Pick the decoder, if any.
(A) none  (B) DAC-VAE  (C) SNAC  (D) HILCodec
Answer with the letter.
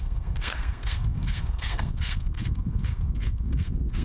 C